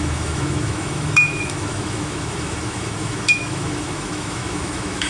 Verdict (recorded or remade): remade